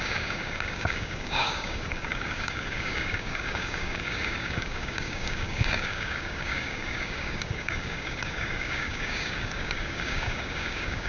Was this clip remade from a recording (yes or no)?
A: yes